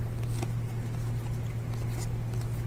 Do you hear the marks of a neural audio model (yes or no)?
no